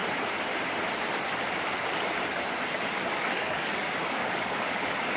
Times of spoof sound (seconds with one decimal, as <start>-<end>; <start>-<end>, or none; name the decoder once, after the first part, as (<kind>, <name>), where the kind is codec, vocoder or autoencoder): 3.1-5.2 (codec, DAC)